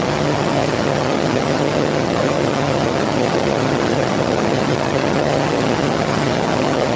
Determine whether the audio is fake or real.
fake